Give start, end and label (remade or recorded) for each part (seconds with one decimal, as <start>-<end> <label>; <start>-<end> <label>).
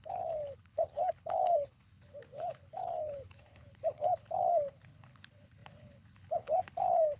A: 0.0-7.2 remade